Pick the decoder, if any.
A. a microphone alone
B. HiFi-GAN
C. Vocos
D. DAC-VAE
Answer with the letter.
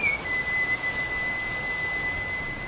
A